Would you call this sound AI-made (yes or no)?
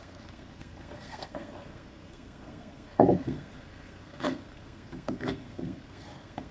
yes